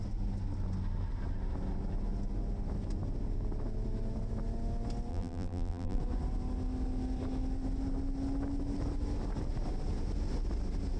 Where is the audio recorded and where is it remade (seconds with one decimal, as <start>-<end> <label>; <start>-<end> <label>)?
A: 0.0-5.1 recorded; 5.1-6.0 remade; 6.0-11.0 recorded